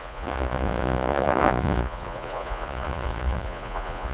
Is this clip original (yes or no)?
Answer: no